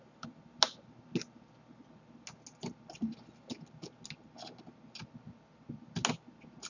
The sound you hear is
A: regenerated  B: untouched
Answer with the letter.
B